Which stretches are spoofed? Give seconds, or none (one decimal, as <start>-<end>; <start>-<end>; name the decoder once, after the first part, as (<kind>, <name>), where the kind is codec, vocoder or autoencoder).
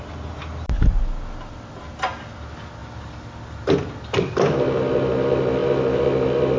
none